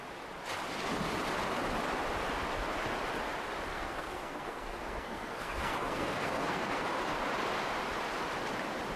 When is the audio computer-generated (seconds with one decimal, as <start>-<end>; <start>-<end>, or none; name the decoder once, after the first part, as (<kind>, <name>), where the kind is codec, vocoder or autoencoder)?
3.7-7.2 (codec, SNAC)